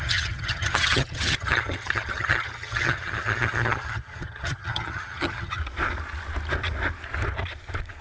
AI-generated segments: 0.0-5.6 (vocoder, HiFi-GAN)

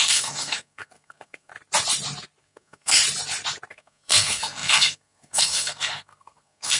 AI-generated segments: 0.0-1.5 (codec, SNAC); 2.4-3.0; 3.7-6.8

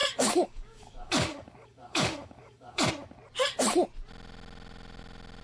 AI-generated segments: 0.0-2.9 (codec, DAC)